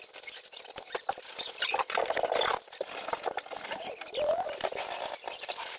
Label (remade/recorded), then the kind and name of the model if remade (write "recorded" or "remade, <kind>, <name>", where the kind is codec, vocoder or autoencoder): recorded